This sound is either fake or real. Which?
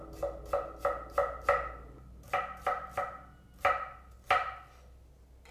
real